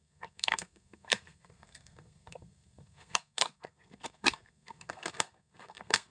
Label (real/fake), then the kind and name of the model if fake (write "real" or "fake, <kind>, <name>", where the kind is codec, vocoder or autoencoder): fake, codec, SNAC